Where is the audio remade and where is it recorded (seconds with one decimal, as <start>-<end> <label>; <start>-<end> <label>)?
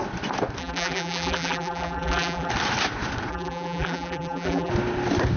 0.0-0.6 recorded; 0.6-2.5 remade; 2.5-3.3 recorded; 3.3-4.7 remade; 4.7-5.4 recorded